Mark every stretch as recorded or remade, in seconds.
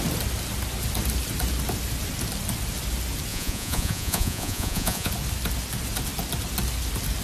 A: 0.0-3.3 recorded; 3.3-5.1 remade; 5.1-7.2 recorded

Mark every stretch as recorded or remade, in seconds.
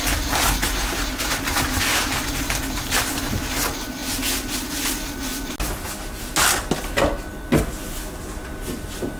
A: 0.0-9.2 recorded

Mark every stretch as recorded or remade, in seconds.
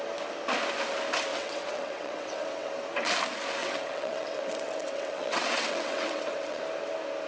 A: 0.0-1.3 recorded; 1.3-2.7 remade; 2.7-3.6 recorded; 3.6-6.6 remade; 6.6-7.3 recorded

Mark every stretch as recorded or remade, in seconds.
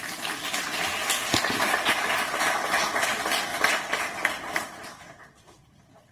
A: 0.0-6.1 recorded